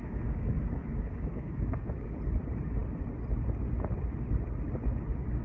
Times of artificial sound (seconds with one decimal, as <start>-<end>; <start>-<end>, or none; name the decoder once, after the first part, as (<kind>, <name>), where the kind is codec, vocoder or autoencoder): 0.0-2.2 (codec, DAC)